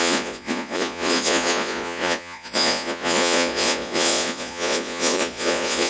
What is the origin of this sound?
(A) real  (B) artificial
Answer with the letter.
B